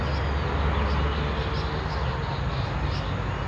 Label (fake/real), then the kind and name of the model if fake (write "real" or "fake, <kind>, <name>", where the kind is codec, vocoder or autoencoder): real